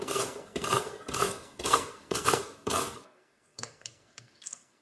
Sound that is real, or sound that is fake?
fake